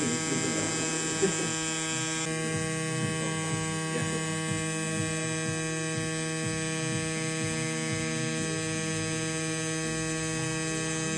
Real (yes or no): yes